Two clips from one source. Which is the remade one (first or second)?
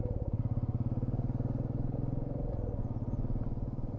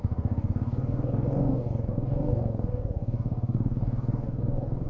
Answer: second